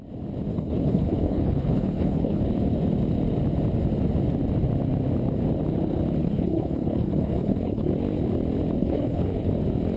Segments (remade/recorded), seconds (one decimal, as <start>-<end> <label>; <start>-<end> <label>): 0.0-0.5 recorded; 0.5-2.4 remade; 2.4-6.2 recorded; 6.2-7.9 remade; 7.9-8.8 recorded; 8.8-9.5 remade; 9.5-10.0 recorded